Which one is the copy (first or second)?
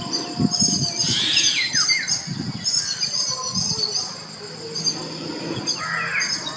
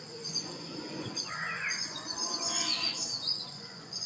second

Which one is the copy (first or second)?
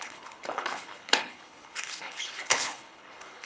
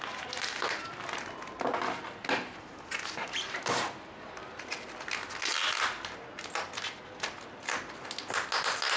first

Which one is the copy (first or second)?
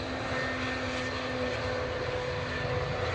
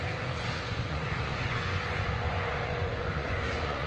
second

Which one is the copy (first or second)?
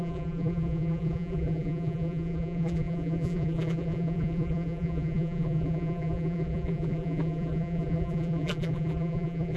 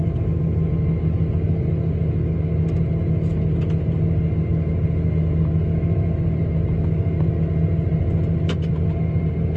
first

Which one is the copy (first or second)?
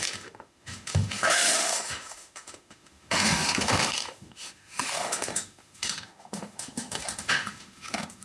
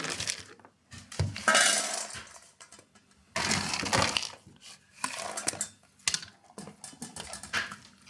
first